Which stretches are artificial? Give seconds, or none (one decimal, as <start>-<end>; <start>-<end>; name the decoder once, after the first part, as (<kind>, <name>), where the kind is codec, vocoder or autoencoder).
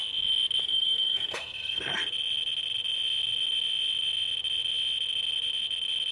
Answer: 0.6-1.9 (codec, SNAC)